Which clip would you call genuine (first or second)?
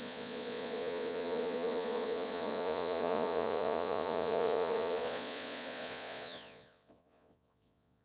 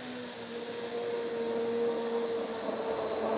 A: second